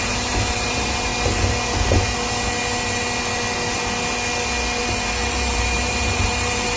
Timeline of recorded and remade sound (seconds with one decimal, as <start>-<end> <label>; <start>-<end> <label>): 0.0-1.1 remade; 1.1-4.8 recorded; 4.8-6.8 remade